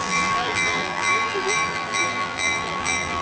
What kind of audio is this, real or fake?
fake